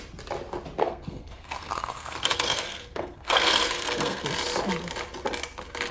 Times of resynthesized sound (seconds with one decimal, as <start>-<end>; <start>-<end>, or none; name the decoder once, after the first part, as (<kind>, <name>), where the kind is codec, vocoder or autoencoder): 0.8-4.2 (codec, SNAC)